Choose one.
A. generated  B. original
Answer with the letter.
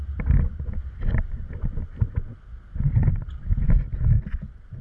B